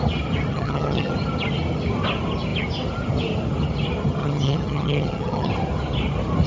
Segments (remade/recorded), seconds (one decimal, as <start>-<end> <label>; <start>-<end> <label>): 0.0-0.5 recorded; 0.5-1.1 remade; 1.1-4.2 recorded; 4.2-5.5 remade; 5.5-6.5 recorded